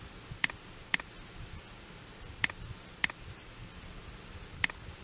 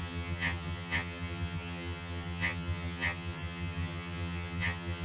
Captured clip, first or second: first